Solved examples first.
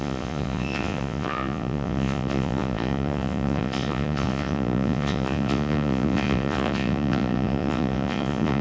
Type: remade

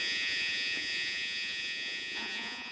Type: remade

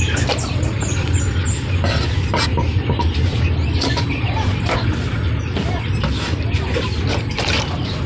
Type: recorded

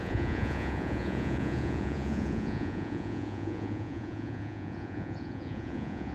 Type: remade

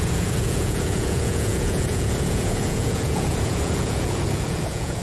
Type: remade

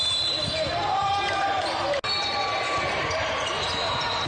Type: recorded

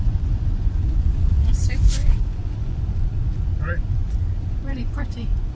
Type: remade